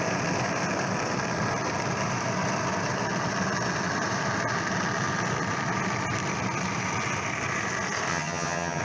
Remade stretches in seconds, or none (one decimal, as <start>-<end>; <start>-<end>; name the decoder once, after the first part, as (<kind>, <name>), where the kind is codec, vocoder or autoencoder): 8.1-8.8 (vocoder, HiFi-GAN)